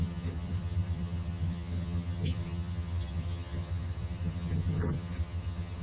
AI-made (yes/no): yes